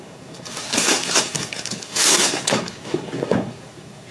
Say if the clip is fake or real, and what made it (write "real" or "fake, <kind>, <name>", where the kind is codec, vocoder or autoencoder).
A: fake, codec, SNAC